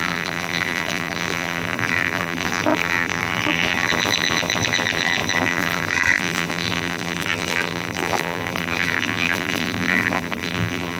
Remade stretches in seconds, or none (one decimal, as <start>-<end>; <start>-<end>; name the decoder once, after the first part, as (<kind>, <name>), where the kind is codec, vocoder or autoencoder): 0.0-11.0 (vocoder, BigVGAN v2)